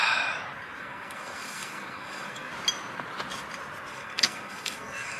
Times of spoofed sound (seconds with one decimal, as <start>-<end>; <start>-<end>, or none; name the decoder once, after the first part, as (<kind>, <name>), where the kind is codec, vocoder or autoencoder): 0.8-2.5 (codec, SNAC); 3.9-5.2